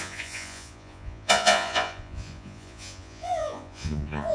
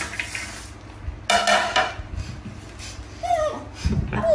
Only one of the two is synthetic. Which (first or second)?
first